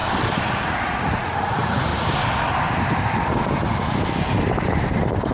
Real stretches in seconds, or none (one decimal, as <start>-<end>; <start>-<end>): 0.0-0.5; 1.9-5.3